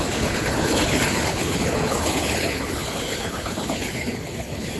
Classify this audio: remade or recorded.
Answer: remade